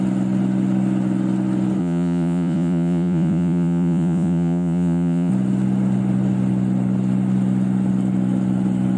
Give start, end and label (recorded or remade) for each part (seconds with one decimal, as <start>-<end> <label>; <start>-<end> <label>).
0.0-1.8 recorded; 1.8-5.3 remade; 5.3-9.0 recorded